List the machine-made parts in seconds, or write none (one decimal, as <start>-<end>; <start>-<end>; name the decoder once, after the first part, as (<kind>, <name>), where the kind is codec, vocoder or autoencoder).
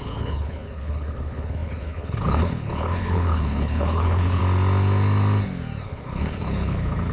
0.0-4.4 (codec, HILCodec); 5.8-7.1